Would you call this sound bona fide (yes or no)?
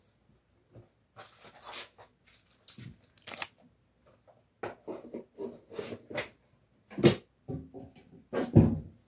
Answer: yes